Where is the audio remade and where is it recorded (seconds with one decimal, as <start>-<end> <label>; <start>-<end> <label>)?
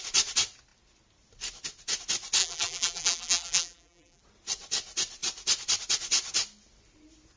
0.0-2.4 recorded; 2.4-4.2 remade; 4.2-7.4 recorded